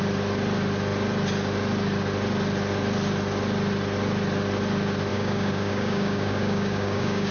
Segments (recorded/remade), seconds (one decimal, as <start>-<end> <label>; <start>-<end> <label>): 0.0-5.1 recorded; 5.1-7.3 remade